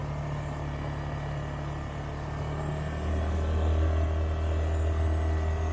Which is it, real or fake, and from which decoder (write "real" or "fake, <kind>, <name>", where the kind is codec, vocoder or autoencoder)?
real